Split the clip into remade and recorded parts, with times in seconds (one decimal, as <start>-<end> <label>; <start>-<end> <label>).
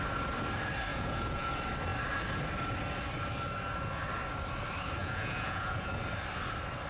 0.0-0.9 recorded; 0.9-1.5 remade; 1.5-5.0 recorded; 5.0-6.0 remade; 6.0-6.9 recorded